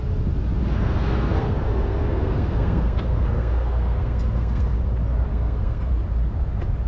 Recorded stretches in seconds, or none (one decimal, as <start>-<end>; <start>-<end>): 0.0-0.7; 4.8-5.3; 5.9-6.9